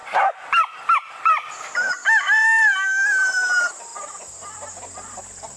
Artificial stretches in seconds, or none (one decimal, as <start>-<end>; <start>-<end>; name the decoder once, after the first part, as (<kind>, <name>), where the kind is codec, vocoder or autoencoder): 0.0-2.0 (vocoder, BigVGAN v2); 3.1-3.9; 5.1-5.6